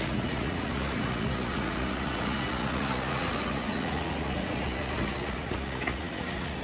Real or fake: fake